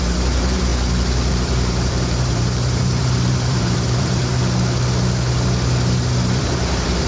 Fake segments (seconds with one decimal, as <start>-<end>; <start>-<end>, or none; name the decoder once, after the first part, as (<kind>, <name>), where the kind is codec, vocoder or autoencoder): 0.0-0.7 (vocoder, BigVGAN v2); 1.3-4.3; 6.3-7.1